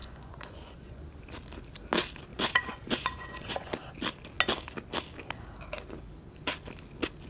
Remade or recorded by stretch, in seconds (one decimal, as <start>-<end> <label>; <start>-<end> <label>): 0.0-1.0 remade; 1.0-2.3 recorded; 2.3-3.7 remade; 3.7-7.3 recorded